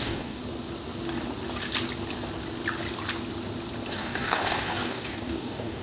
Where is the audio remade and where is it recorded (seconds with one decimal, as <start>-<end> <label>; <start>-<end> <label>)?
0.0-0.4 remade; 0.4-3.9 recorded; 3.9-5.8 remade